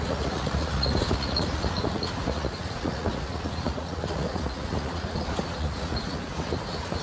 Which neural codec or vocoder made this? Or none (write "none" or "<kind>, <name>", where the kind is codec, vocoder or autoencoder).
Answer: vocoder, Vocos